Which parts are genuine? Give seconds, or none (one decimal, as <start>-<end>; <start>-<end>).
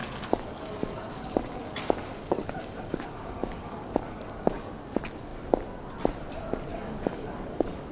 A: 4.7-6.7